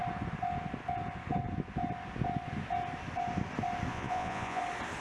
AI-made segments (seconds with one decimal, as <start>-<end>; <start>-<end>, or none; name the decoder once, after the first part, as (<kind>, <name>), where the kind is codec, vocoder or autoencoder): 3.9-4.6 (vocoder, Vocos)